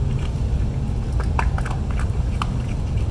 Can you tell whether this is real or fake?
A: real